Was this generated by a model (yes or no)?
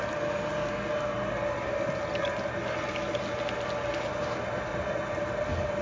no